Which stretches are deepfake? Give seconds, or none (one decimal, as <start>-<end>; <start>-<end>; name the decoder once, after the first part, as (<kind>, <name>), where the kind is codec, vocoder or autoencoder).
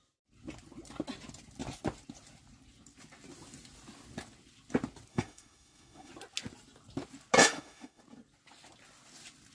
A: 5.1-6.1 (autoencoder, DAC-VAE); 7.4-8.0